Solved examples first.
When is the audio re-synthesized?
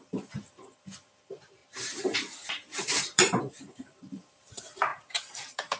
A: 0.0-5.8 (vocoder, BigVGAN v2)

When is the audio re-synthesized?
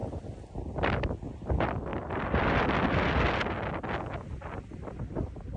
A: 0.7-1.9 (vocoder, BigVGAN v2); 4.3-5.6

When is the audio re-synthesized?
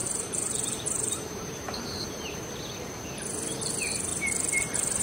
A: 0.0-2.6 (vocoder, BigVGAN v2); 4.1-5.0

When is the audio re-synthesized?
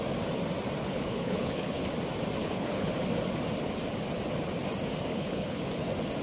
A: 0.8-1.9 (codec, HILCodec); 2.4-2.9; 5.1-5.6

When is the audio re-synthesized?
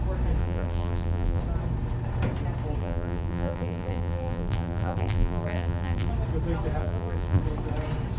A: 0.4-1.4 (vocoder, BigVGAN v2); 2.8-6.1; 6.8-7.4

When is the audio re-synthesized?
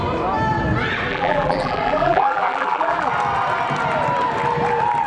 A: 1.1-3.1 (vocoder, BigVGAN v2)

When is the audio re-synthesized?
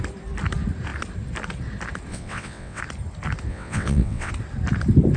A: 2.1-2.8 (vocoder, WaveNeXt); 3.5-4.3